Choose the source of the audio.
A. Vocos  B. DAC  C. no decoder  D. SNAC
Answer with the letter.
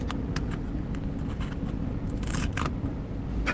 C